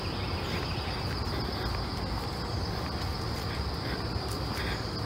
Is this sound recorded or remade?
recorded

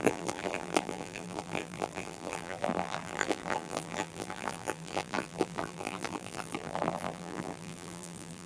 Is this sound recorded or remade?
remade